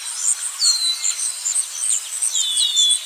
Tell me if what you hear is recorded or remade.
recorded